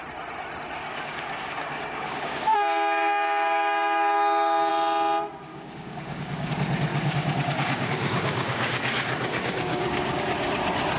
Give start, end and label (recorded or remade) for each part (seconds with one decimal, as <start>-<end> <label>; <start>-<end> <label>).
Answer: 0.0-0.8 recorded; 0.8-4.7 remade; 4.7-5.5 recorded; 5.5-6.5 remade; 6.5-6.9 recorded; 6.9-10.2 remade; 10.2-11.0 recorded